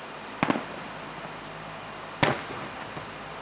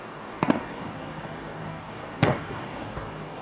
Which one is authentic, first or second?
first